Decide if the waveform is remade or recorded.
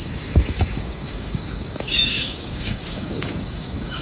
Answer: remade